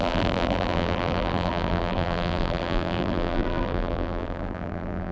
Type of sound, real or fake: fake